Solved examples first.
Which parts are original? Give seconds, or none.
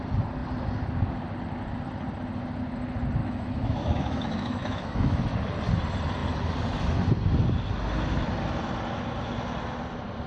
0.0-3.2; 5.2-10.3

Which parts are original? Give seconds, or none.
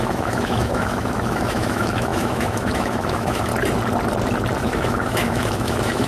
3.5-4.6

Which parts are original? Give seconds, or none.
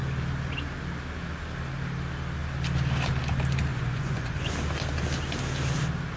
0.0-3.7; 4.5-6.2